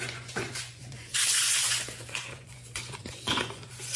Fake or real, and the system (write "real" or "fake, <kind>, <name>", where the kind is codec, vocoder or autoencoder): fake, vocoder, Vocos